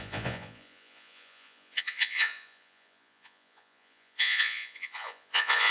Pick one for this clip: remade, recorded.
remade